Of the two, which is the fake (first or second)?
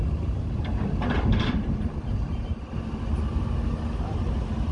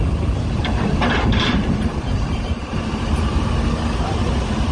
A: second